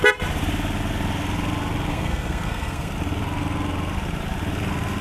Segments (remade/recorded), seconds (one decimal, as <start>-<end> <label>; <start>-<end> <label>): 0.0-1.9 recorded; 1.9-2.9 remade; 2.9-5.0 recorded

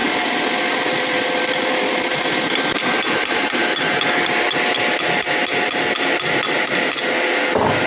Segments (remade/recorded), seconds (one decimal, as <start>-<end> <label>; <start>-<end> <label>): 0.0-7.9 recorded

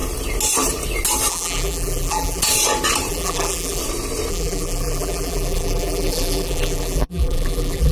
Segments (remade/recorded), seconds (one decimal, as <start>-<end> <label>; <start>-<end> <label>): 0.0-1.3 recorded; 1.3-2.4 remade; 2.4-3.1 recorded; 3.1-3.8 remade; 3.8-4.3 recorded; 4.3-7.9 remade

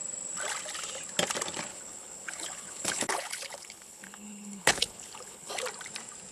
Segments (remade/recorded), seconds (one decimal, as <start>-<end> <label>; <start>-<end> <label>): 0.0-1.7 recorded; 1.7-5.5 remade; 5.5-6.3 recorded

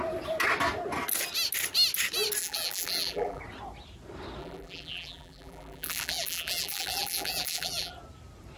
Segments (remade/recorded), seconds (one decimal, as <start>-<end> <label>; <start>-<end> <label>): 0.0-2.4 recorded; 2.4-3.4 remade; 3.4-4.4 recorded; 4.4-7.9 remade; 7.9-8.6 recorded

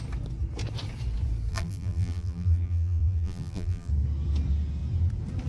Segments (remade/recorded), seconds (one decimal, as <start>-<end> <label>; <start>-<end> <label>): 0.0-1.5 recorded; 1.5-3.9 remade; 3.9-5.5 recorded

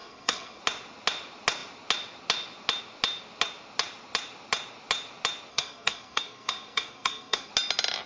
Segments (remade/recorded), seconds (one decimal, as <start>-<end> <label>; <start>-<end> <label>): 0.0-0.6 remade; 0.6-5.5 recorded; 5.5-7.5 remade; 7.5-8.1 recorded